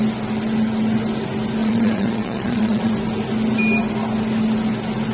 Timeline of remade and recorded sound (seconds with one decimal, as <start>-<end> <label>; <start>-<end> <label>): 0.0-1.6 recorded; 1.6-2.9 remade; 2.9-5.1 recorded